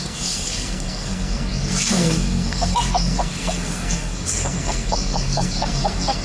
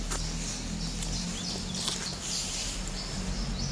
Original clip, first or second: second